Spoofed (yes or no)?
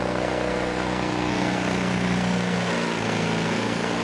yes